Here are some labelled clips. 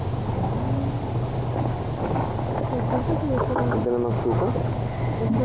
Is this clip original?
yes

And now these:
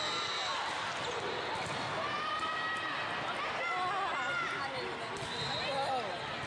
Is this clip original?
yes